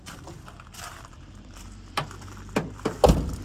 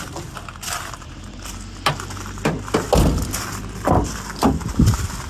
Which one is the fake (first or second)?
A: first